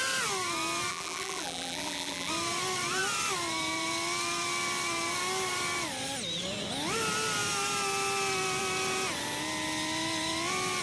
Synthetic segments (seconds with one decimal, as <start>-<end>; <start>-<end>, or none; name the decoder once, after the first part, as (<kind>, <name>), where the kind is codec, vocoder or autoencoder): 0.9-2.3 (vocoder, BigVGAN v2)